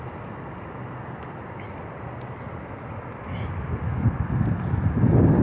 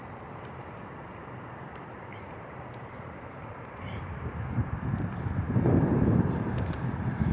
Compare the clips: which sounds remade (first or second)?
second